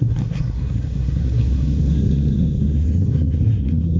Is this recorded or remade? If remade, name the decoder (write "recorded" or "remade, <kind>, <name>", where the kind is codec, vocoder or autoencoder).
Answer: remade, codec, SNAC